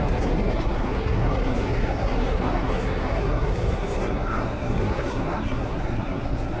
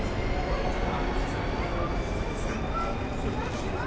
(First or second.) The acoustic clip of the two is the second